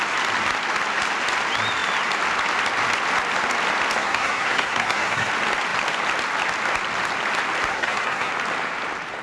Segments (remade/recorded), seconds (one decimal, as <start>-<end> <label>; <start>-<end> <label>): 0.0-4.0 recorded; 4.0-5.3 remade; 5.3-7.7 recorded; 7.7-8.3 remade; 8.3-9.2 recorded